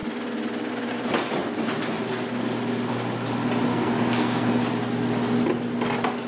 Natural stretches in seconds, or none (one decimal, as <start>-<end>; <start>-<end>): 0.0-3.7; 4.6-6.3

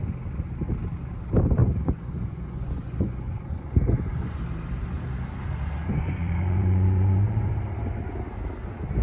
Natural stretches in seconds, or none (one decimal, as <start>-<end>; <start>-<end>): 0.0-1.6; 4.4-5.8; 7.5-9.0

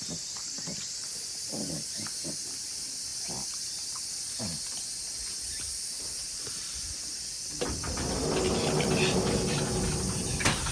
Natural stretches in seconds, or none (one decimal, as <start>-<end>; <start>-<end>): 0.0-10.7